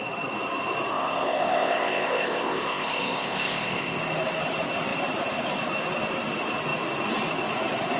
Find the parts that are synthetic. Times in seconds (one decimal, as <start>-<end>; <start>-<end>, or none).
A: 0.9-4.0